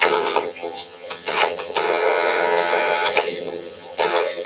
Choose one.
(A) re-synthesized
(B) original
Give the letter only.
A